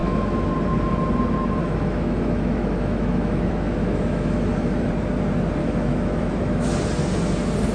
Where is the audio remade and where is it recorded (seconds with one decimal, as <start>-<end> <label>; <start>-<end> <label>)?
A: 0.0-0.5 remade; 0.5-1.6 recorded; 1.6-4.9 remade; 4.9-5.6 recorded; 5.6-6.7 remade; 6.7-7.7 recorded